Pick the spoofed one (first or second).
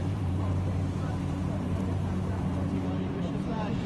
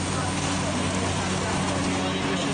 first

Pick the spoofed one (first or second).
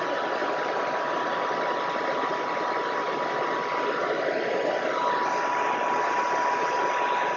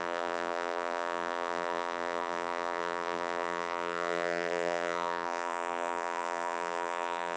second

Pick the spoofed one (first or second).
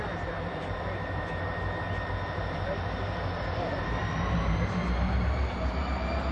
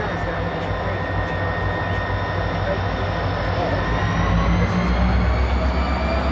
first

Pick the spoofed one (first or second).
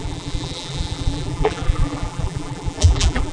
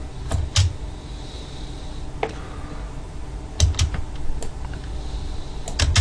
first